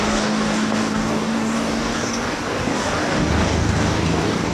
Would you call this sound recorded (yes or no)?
no